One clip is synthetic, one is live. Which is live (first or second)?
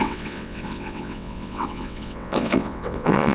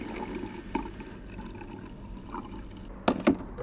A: second